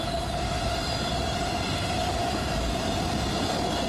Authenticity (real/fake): real